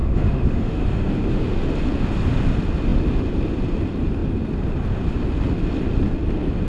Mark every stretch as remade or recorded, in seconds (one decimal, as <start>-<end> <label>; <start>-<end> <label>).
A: 0.0-1.1 remade; 1.1-6.7 recorded